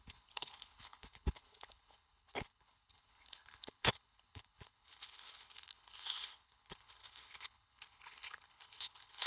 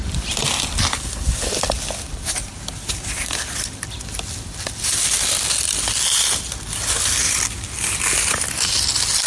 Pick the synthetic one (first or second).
first